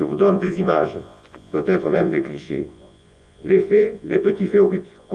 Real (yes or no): no